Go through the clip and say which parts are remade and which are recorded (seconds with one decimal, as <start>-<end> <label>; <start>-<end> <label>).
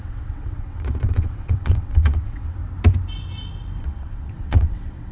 0.0-2.6 remade; 2.6-3.8 recorded; 3.8-5.1 remade